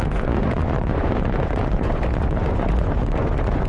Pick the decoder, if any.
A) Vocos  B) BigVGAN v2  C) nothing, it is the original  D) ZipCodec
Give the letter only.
A